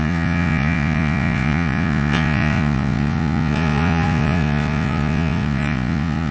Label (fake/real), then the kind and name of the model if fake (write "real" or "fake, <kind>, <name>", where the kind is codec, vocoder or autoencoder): fake, vocoder, Vocos